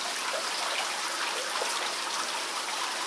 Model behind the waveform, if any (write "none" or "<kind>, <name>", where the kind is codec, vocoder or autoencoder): none